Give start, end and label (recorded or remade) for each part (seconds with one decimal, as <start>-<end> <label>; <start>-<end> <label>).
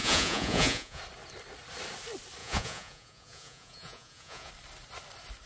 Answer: 0.0-1.0 remade; 1.0-2.4 recorded; 2.4-4.5 remade; 4.5-5.5 recorded